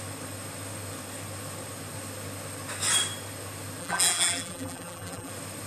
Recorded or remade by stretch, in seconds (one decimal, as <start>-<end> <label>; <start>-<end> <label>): 0.0-3.8 recorded; 3.8-5.3 remade; 5.3-5.7 recorded